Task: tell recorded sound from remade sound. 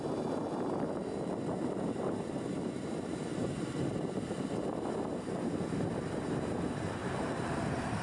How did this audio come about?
remade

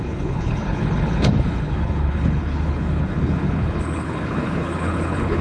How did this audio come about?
remade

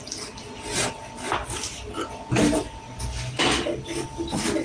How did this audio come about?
recorded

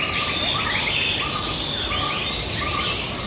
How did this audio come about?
recorded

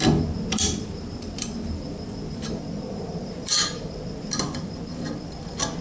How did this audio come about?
remade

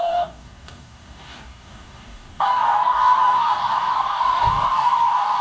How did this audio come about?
remade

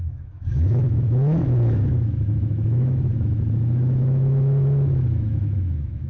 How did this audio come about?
remade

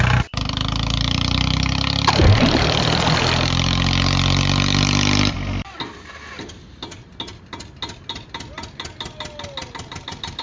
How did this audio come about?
recorded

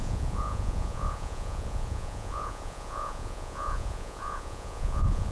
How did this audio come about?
remade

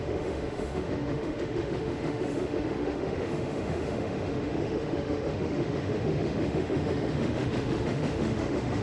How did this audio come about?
remade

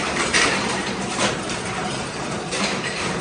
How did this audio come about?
remade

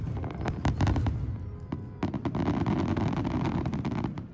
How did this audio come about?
recorded